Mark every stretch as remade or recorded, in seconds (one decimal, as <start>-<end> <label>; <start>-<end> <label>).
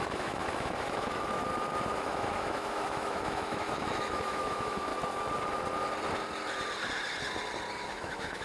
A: 0.0-1.4 remade; 1.4-2.0 recorded; 2.0-4.9 remade; 4.9-7.9 recorded; 7.9-8.4 remade